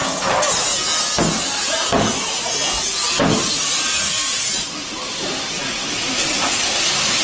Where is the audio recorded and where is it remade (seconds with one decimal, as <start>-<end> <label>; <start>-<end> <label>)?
0.0-3.6 recorded; 3.6-5.6 remade; 5.6-6.4 recorded; 6.4-7.2 remade